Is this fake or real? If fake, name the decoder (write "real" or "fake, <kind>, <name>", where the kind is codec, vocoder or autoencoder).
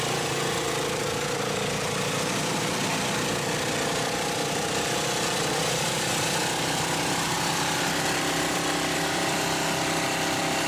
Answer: fake, vocoder, BigVGAN v2